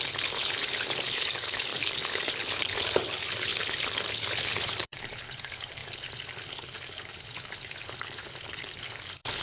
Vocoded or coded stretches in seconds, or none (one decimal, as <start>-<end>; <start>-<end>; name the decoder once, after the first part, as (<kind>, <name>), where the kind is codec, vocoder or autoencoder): 0.0-9.4 (codec, HILCodec)